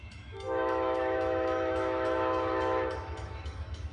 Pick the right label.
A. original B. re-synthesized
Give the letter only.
B